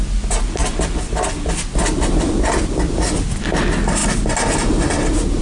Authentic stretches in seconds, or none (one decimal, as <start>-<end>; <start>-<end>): 0.0-5.4